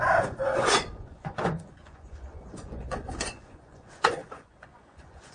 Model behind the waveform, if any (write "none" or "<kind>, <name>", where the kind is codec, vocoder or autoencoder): vocoder, Vocos